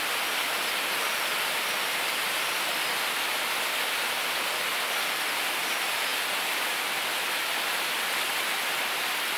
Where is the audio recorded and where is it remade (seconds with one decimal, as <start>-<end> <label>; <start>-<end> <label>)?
0.0-6.1 recorded; 6.1-8.1 remade; 8.1-9.4 recorded